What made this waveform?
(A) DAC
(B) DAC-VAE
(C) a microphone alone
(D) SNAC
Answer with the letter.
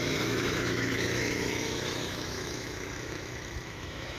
B